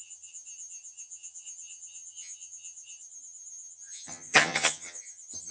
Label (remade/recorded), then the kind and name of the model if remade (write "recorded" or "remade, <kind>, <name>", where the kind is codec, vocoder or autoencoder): remade, vocoder, HiFi-GAN